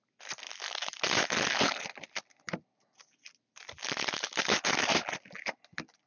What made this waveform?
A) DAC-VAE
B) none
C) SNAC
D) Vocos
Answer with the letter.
B